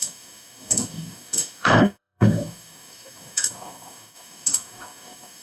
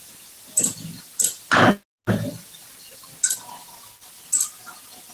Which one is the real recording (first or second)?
second